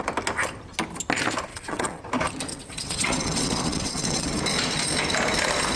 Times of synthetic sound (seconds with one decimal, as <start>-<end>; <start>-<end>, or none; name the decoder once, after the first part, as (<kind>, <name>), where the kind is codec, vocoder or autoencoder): 1.5-2.0 (vocoder, WaveNeXt); 2.5-4.4